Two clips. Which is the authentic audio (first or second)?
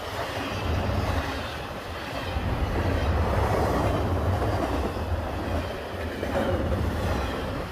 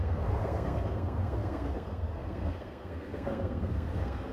first